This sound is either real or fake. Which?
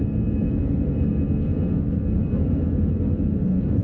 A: real